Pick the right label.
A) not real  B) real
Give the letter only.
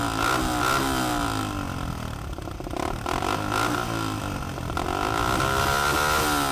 B